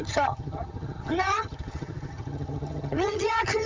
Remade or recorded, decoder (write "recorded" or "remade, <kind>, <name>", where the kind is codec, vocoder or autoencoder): remade, vocoder, HiFi-GAN